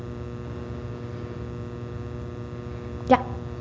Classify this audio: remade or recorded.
recorded